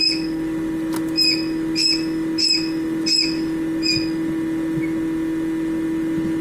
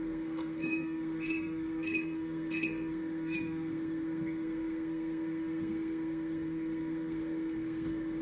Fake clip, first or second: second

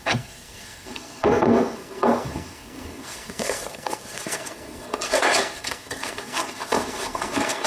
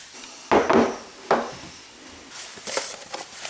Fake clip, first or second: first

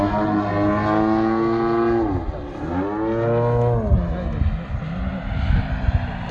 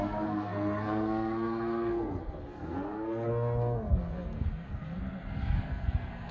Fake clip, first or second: second